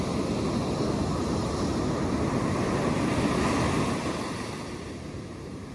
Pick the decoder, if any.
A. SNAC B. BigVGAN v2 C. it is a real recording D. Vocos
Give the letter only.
C